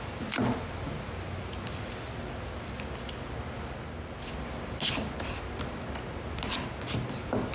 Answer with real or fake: real